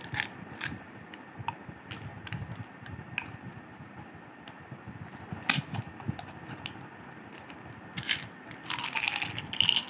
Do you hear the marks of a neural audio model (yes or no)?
no